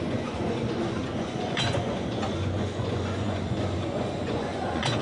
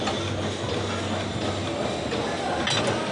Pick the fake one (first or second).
first